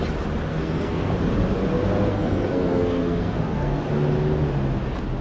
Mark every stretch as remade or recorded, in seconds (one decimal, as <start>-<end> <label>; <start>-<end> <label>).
0.0-0.5 recorded; 0.5-1.1 remade; 1.1-2.1 recorded; 2.1-3.8 remade; 3.8-5.2 recorded

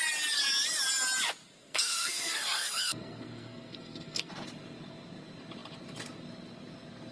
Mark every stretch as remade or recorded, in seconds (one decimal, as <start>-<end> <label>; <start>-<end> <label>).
0.0-1.6 recorded; 1.6-4.3 remade; 4.3-7.1 recorded

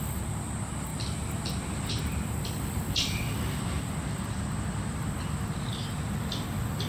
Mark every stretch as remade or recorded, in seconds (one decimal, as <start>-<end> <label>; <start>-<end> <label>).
0.0-6.9 recorded

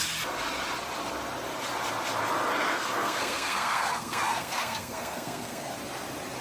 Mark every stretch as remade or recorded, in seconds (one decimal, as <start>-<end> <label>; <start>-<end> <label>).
0.0-2.7 recorded; 2.7-5.7 remade; 5.7-6.4 recorded

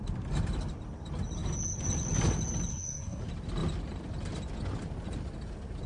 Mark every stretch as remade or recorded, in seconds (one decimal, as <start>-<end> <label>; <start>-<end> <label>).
0.0-2.7 recorded; 2.7-3.2 remade; 3.2-5.9 recorded

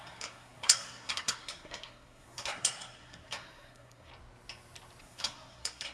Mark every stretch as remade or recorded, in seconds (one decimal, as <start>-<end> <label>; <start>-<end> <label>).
0.0-4.1 remade; 4.1-5.0 recorded; 5.0-5.9 remade

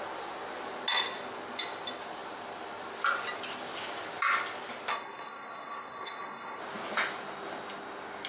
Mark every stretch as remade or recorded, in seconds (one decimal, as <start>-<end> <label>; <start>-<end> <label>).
0.0-4.9 recorded; 4.9-6.6 remade; 6.6-8.3 recorded

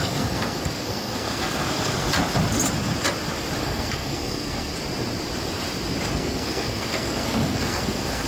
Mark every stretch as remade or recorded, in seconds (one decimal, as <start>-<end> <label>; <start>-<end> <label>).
0.0-2.1 remade; 2.1-3.6 recorded; 3.6-4.7 remade; 4.7-6.1 recorded; 6.1-8.3 remade